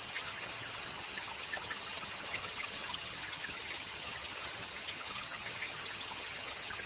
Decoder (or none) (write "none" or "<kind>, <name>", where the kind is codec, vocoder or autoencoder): vocoder, HiFi-GAN